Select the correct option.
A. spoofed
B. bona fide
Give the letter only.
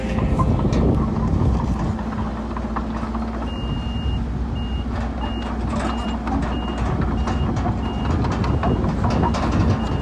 B